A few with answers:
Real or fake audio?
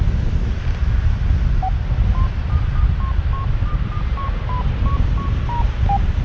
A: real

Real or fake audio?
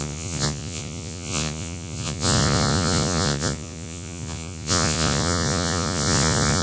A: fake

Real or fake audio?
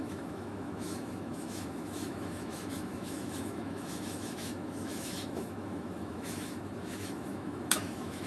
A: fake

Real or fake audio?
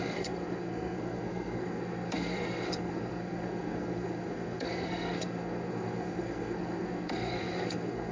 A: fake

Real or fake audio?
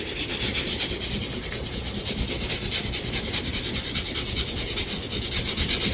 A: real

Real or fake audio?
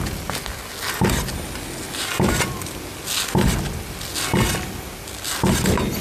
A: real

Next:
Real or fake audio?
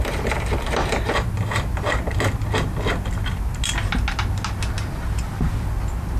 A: real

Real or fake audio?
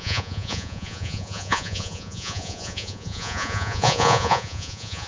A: fake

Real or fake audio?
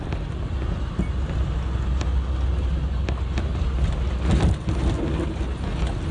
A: real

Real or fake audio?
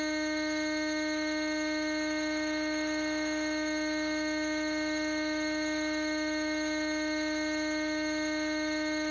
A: fake